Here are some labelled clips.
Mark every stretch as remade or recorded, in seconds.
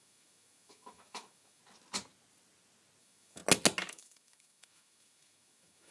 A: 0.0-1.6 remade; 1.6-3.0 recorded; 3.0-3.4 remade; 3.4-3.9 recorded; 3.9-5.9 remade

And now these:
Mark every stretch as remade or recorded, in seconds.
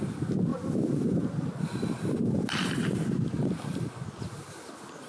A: 0.0-5.1 recorded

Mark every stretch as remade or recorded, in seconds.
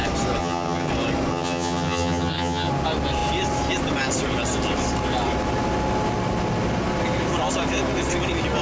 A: 0.0-0.4 recorded; 0.4-0.9 remade; 0.9-1.3 recorded; 1.3-2.7 remade; 2.7-8.6 recorded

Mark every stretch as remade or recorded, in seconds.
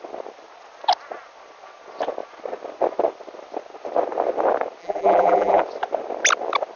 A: 0.0-4.8 recorded; 4.8-5.6 remade; 5.6-6.8 recorded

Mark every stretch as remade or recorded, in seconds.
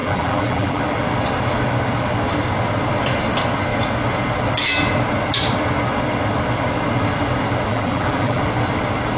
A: 0.0-0.8 remade; 0.8-7.7 recorded; 7.7-8.4 remade; 8.4-9.2 recorded